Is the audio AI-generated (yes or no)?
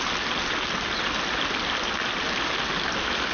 no